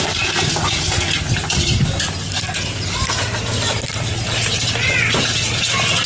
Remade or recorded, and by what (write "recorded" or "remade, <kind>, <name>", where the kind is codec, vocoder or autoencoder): recorded